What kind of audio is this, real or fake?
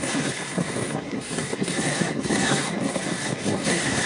fake